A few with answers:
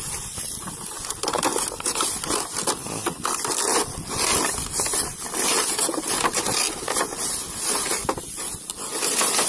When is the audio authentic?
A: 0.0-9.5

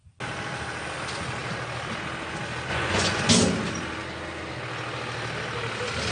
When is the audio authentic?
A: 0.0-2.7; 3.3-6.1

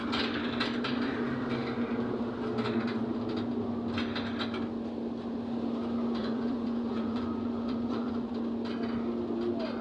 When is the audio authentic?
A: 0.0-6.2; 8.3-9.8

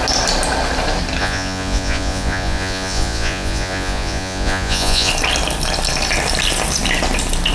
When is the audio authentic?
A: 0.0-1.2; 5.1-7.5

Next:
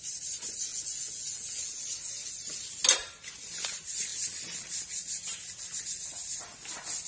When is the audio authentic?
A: 0.0-0.7; 1.8-7.1